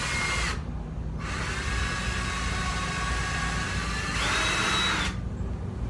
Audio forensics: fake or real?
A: real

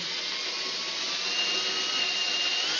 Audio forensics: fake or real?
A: real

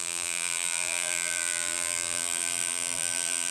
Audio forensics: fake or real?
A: fake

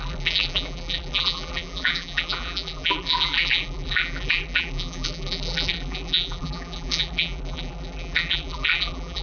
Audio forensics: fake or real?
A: fake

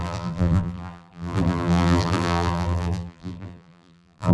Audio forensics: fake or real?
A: fake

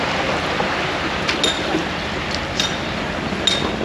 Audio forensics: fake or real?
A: real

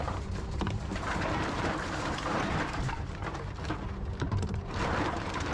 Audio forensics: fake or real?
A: fake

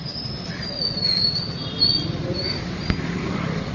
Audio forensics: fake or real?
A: fake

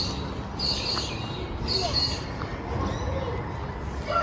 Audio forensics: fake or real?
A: real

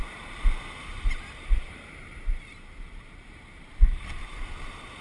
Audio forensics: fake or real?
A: fake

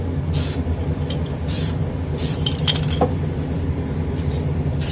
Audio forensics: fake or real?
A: fake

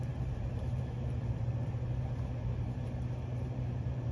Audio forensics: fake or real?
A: fake